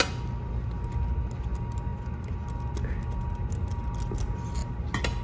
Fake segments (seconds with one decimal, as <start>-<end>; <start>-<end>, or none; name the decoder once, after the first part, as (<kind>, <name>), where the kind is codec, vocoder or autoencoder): none

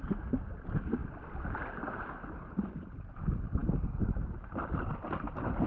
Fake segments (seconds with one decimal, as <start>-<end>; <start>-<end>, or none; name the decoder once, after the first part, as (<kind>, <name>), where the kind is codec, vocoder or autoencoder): none

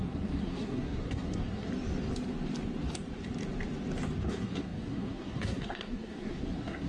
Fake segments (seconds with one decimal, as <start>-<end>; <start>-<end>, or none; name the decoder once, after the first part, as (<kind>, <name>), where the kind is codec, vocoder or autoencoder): 0.0-1.7 (codec, SNAC); 4.3-6.9

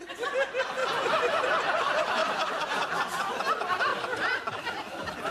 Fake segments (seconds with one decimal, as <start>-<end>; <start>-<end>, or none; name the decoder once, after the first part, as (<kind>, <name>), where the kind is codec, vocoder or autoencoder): 0.8-1.5 (vocoder, BigVGAN v2); 2.2-2.9; 3.9-4.6

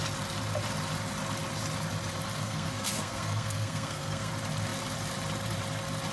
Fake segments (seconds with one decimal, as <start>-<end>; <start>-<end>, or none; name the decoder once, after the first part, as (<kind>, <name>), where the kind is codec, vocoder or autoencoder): 2.4-4.3 (codec, SNAC)

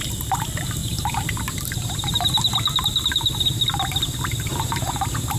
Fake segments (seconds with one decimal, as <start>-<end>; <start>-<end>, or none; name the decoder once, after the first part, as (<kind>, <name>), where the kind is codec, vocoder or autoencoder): 0.8-2.1 (vocoder, BigVGAN v2); 4.5-5.4